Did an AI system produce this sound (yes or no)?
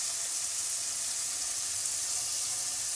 no